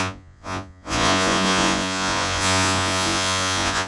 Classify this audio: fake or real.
fake